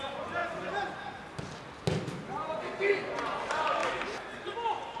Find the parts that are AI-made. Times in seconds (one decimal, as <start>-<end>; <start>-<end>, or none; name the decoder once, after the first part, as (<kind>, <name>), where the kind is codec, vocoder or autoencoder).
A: 2.6-3.1 (codec, SNAC)